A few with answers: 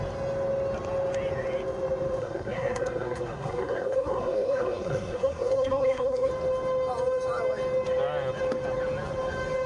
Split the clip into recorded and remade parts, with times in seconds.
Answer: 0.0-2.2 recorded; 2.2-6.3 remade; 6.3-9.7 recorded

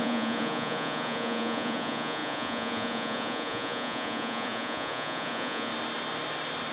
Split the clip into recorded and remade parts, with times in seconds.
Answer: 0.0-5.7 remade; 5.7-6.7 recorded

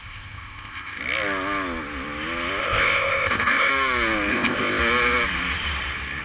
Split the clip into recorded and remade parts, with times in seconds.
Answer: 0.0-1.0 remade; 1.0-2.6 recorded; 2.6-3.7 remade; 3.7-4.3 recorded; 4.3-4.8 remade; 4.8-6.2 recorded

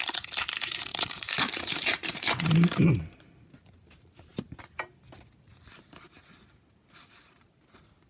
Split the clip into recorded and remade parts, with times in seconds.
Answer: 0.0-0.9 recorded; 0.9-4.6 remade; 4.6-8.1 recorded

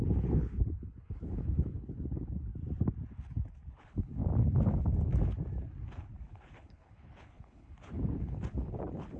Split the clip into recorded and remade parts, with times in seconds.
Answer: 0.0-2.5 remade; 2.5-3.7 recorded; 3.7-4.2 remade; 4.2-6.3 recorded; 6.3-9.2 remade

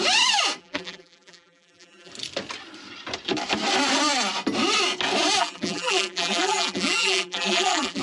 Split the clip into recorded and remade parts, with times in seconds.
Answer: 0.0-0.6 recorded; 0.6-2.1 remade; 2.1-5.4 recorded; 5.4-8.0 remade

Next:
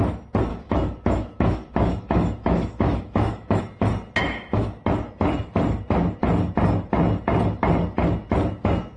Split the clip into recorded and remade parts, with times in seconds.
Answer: 0.0-0.5 recorded; 0.5-3.6 remade; 3.6-4.2 recorded; 4.2-4.8 remade; 4.8-9.0 recorded